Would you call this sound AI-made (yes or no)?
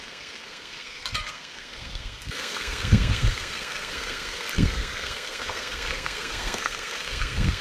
yes